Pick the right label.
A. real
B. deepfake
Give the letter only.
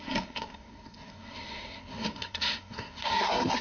B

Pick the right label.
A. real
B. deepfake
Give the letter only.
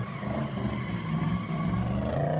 A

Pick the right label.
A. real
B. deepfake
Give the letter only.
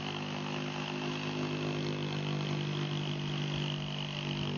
A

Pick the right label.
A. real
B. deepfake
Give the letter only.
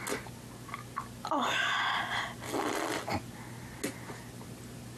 A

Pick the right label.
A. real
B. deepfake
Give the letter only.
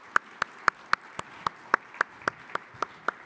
A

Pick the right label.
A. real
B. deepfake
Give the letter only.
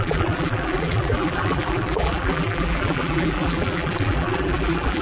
B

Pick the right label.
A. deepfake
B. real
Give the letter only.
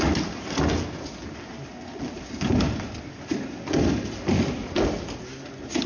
B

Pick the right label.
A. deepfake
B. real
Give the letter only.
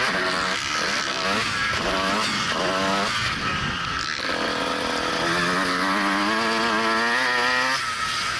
B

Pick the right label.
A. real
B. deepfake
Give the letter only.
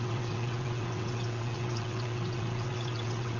B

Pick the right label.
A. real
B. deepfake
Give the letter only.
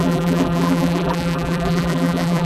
B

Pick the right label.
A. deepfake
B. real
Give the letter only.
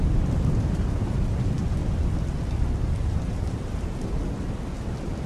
B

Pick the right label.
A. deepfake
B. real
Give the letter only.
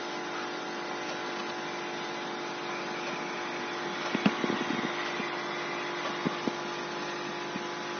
B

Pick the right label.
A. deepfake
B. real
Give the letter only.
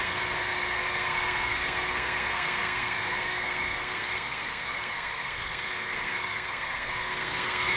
A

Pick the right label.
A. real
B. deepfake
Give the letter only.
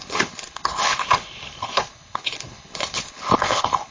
B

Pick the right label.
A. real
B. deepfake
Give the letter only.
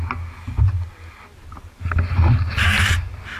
A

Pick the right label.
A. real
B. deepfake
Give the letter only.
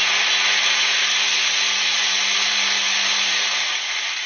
A